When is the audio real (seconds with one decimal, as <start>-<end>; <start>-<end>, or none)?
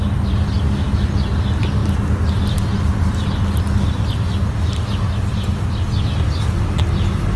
0.0-7.4